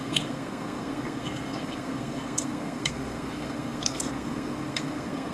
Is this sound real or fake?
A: fake